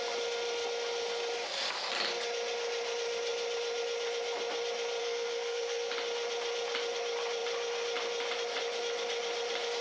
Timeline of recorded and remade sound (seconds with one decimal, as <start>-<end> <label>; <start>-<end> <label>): 0.0-5.0 recorded; 5.0-5.9 remade; 5.9-9.8 recorded